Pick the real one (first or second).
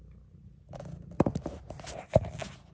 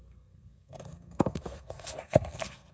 first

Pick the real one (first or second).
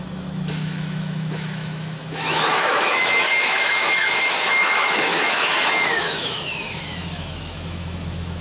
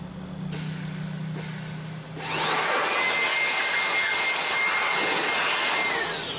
second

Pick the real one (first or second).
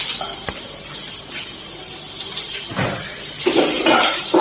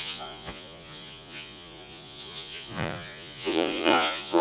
first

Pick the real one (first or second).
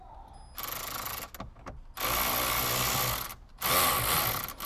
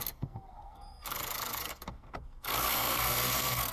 first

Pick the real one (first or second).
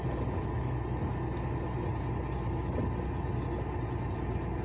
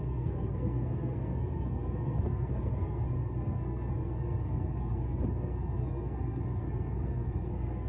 first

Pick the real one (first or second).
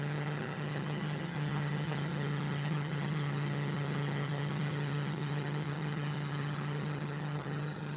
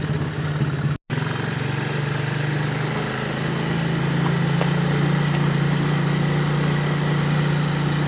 second